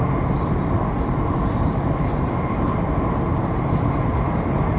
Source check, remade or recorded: recorded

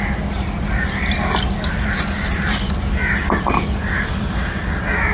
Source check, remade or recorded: recorded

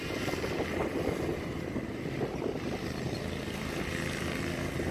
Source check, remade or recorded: remade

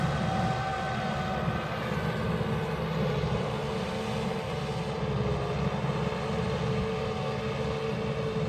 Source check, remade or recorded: recorded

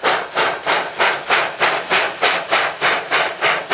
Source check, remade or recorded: recorded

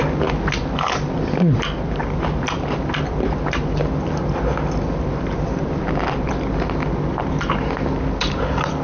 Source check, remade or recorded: recorded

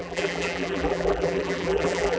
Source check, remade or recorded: remade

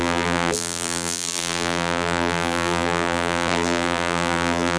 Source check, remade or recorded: remade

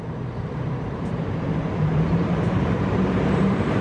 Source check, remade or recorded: remade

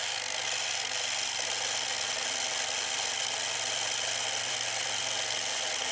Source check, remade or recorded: remade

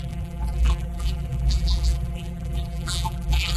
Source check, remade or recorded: remade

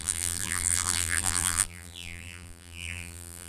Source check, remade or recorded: remade